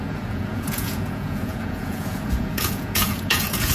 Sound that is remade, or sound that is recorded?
remade